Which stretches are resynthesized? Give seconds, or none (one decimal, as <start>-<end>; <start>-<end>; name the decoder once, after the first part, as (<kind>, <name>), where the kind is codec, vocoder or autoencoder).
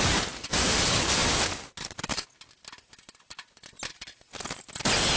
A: none